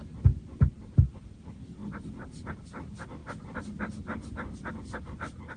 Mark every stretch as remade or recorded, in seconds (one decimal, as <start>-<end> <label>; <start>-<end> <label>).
0.0-5.6 recorded